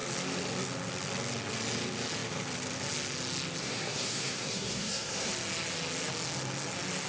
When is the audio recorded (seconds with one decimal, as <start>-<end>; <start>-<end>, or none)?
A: 0.0-3.6; 5.3-7.1